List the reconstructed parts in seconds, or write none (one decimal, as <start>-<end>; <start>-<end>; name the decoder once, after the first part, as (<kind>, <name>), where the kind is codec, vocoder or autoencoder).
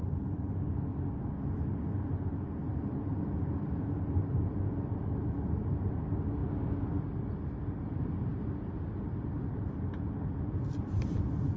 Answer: none